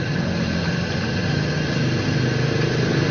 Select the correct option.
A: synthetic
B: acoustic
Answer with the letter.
B